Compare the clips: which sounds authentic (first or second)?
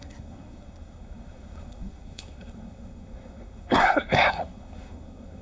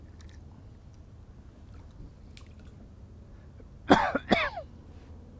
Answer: second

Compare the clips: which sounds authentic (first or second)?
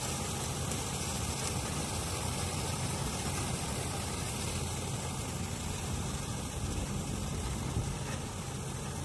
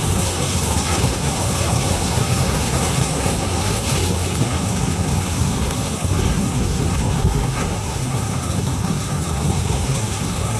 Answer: first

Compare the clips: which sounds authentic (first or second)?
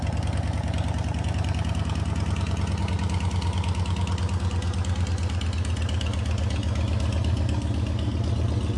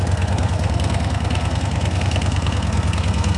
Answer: first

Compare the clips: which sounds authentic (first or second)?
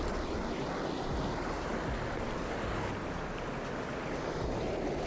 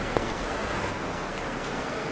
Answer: first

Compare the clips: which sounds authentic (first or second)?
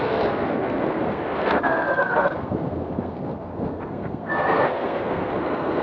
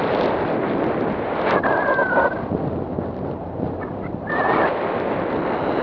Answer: second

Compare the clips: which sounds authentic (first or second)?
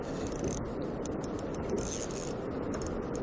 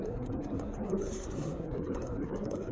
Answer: first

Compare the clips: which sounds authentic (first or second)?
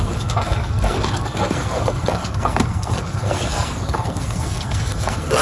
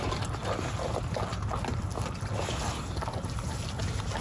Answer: second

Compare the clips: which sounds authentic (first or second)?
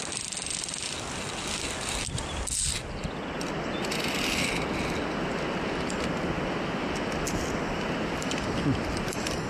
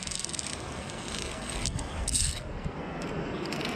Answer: first